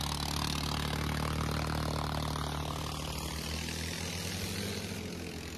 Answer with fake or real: real